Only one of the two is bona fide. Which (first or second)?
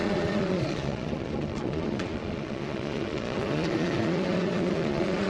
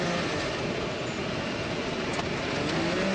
second